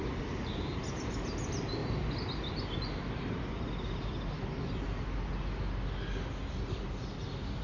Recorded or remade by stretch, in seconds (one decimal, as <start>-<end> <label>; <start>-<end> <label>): 0.0-7.6 recorded